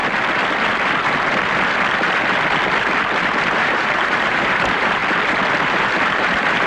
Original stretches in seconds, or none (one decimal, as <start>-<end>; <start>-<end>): 0.0-3.4; 5.0-5.6